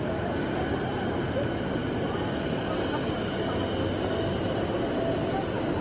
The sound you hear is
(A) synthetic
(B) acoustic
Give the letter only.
B